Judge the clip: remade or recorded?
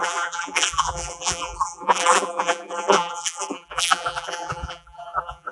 remade